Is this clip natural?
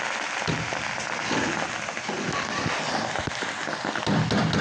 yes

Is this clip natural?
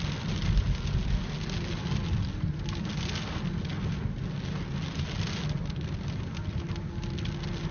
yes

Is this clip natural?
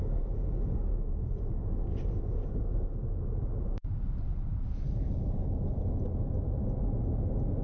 yes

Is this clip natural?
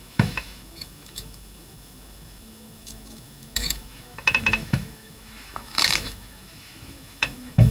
no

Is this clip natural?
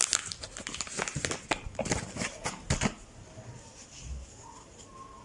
yes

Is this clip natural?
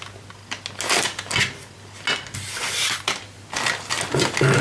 yes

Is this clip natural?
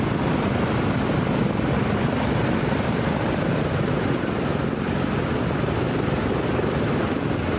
yes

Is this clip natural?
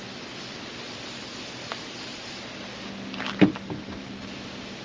yes